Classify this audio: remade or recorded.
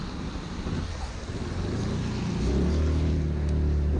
recorded